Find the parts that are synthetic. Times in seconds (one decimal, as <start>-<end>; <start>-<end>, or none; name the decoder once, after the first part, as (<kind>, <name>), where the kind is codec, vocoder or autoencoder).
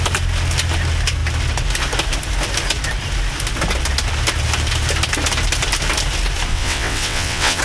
6.5-7.6 (vocoder, WaveNeXt)